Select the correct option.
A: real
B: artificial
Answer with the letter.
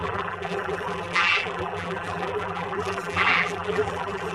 B